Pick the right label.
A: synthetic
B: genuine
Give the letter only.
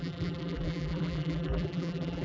A